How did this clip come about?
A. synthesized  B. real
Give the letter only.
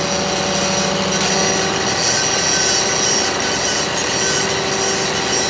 B